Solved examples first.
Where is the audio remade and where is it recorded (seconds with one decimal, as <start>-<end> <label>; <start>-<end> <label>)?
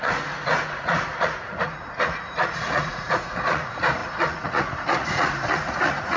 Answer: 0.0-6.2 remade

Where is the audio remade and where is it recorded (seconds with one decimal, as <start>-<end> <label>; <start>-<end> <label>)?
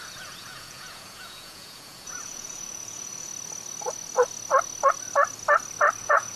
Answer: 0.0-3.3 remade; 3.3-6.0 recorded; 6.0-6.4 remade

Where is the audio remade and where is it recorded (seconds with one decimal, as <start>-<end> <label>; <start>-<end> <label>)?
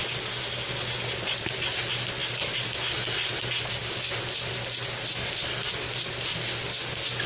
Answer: 0.0-7.3 recorded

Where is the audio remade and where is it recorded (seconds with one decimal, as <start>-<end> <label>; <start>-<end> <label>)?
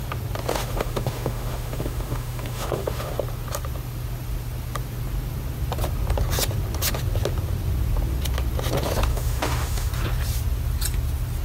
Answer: 0.0-0.5 recorded; 0.5-3.1 remade; 3.1-9.1 recorded; 9.1-9.9 remade; 9.9-11.4 recorded